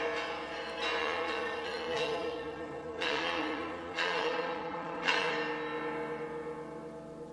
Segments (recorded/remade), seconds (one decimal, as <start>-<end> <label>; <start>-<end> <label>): 0.0-1.0 recorded; 1.0-5.3 remade; 5.3-7.3 recorded

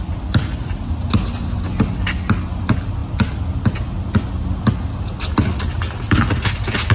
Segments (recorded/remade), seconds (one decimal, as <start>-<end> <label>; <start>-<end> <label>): 0.0-6.9 recorded

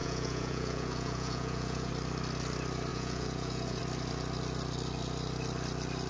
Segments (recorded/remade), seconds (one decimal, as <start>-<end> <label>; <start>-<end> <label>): 0.0-1.9 remade; 1.9-2.9 recorded; 2.9-3.8 remade; 3.8-6.1 recorded

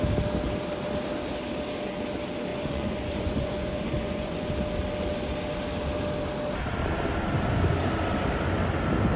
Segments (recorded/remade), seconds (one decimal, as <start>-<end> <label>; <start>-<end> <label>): 0.0-2.5 recorded; 2.5-4.5 remade; 4.5-9.2 recorded

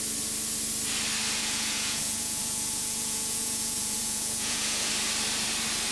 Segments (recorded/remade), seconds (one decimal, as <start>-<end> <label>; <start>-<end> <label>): 0.0-1.4 recorded; 1.4-4.9 remade; 4.9-5.9 recorded

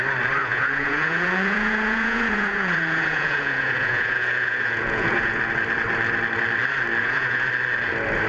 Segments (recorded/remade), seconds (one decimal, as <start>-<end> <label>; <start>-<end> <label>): 0.0-0.4 recorded; 0.4-5.4 remade; 5.4-7.0 recorded; 7.0-7.5 remade; 7.5-8.3 recorded

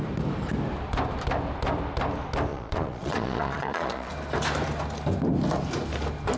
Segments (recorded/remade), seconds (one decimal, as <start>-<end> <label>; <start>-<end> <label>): 0.0-2.5 recorded; 2.5-4.1 remade; 4.1-6.4 recorded